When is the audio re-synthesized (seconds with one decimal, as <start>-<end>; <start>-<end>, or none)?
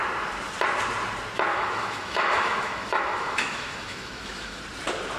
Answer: 1.5-4.6